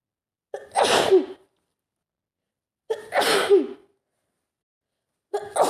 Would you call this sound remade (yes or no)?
no